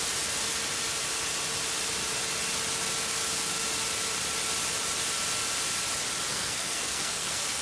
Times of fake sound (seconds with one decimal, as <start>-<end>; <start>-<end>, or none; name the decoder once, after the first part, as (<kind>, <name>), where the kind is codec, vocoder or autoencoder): 6.3-7.6 (codec, SNAC)